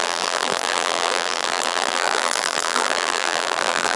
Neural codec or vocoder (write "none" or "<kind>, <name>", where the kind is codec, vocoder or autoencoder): vocoder, BigVGAN v2